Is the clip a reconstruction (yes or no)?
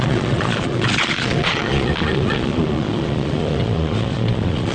yes